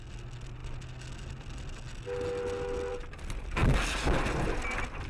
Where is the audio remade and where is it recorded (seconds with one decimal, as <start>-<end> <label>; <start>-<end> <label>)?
0.0-5.1 recorded